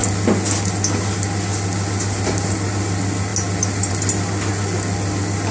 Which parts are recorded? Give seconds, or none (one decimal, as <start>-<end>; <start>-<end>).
0.0-5.5